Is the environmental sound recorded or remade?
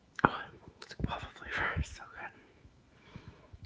remade